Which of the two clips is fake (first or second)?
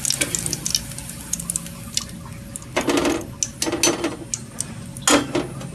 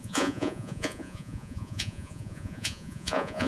second